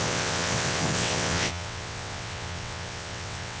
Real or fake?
fake